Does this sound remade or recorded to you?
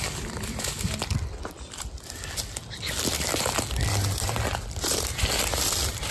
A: recorded